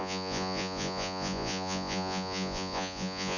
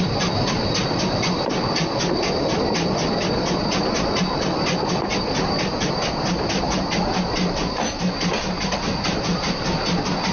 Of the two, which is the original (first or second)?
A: second